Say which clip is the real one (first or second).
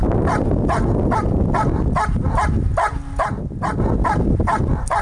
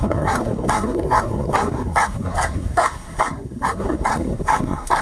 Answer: first